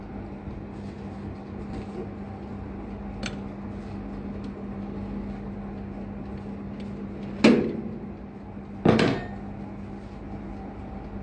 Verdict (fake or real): real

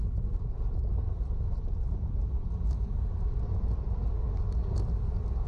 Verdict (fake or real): fake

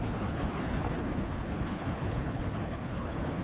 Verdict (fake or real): fake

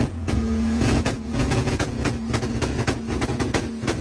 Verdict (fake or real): fake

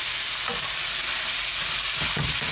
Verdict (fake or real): real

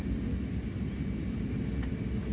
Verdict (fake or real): real